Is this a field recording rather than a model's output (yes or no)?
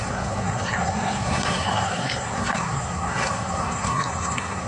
no